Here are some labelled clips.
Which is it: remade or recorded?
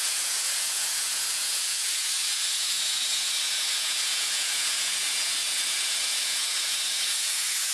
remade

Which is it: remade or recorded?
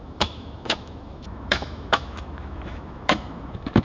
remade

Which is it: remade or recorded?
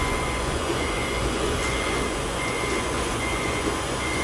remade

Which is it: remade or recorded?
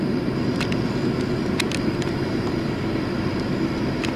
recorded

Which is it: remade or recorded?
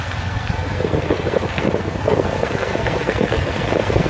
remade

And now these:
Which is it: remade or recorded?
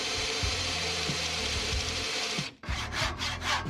remade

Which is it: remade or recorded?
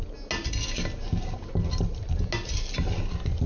recorded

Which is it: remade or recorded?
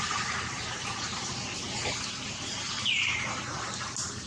remade